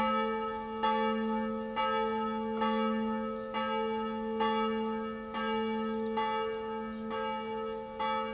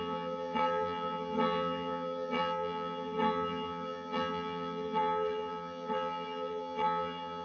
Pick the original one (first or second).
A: first